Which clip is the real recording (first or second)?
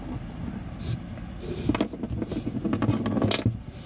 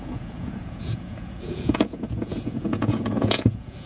first